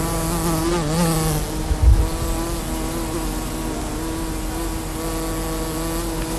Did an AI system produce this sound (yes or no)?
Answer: no